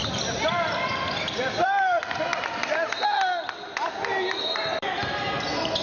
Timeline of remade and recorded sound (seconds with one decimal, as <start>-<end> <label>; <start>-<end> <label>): 0.0-2.3 remade; 2.3-4.4 recorded; 4.4-5.8 remade